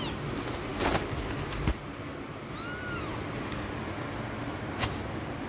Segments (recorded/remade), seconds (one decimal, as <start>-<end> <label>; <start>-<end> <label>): 0.0-5.5 recorded